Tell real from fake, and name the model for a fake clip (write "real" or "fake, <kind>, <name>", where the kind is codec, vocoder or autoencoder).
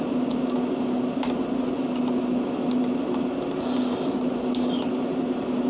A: real